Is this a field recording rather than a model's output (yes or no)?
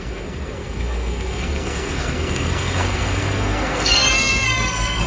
no